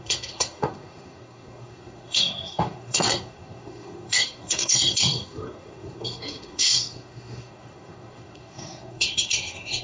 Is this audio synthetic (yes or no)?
yes